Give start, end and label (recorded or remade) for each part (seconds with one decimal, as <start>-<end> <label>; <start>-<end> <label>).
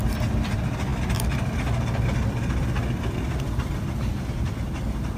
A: 0.0-5.2 recorded